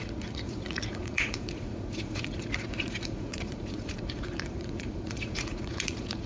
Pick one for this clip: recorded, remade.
remade